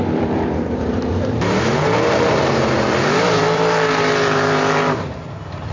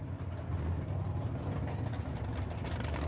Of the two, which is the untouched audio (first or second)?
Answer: second